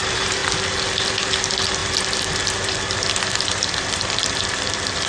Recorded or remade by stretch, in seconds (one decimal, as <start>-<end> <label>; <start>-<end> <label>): 0.0-0.4 remade; 0.4-1.4 recorded; 1.4-5.1 remade